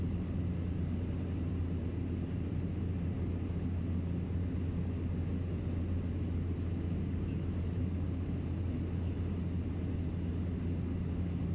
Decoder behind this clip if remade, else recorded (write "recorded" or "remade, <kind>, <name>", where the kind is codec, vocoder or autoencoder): recorded